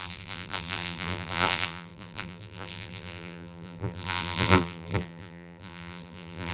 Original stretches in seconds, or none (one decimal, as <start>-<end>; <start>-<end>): none